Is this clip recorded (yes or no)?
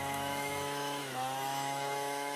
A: no